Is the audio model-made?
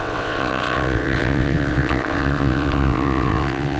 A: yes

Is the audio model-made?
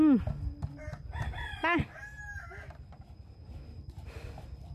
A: no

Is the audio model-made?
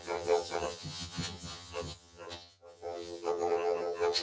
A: yes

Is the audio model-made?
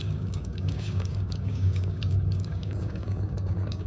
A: yes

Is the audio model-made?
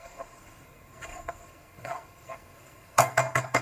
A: yes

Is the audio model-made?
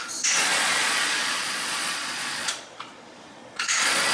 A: yes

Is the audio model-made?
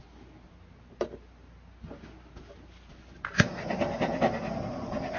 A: no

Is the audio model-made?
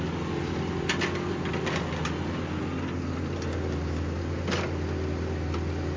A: no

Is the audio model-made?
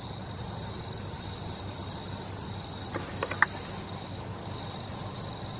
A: no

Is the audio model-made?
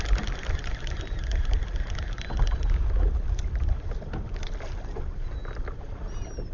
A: no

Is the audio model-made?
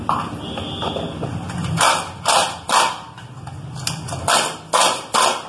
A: no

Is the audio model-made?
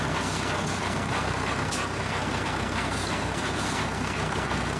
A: yes